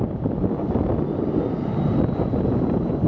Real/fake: real